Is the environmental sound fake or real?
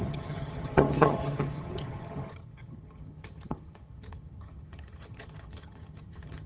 fake